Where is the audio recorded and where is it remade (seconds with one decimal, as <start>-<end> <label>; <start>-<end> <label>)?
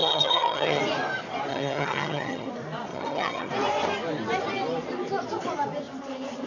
0.0-0.8 remade; 0.8-1.5 recorded; 1.5-2.5 remade; 2.5-2.9 recorded; 2.9-3.5 remade; 3.5-6.5 recorded